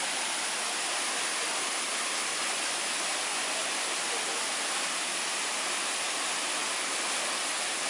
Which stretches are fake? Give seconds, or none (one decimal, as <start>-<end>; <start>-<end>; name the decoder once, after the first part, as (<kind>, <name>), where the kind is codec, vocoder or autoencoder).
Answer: 2.3-2.9 (vocoder, Vocos); 3.3-3.9